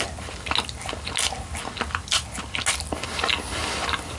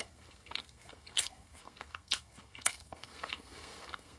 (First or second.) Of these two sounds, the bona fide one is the first